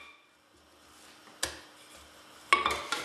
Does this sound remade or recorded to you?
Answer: recorded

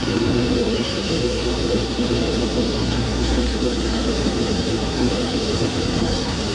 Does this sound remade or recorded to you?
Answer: remade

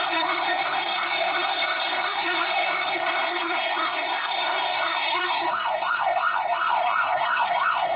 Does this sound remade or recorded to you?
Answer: remade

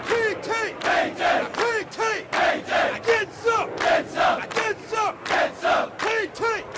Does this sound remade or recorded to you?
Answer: recorded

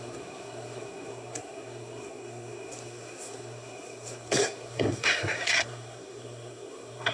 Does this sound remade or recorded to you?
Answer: remade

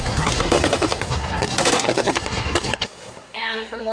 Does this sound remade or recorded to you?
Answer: remade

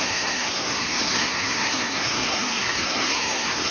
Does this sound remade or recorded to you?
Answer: remade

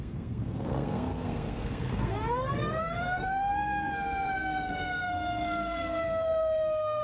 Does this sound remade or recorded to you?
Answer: remade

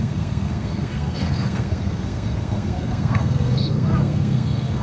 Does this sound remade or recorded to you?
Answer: remade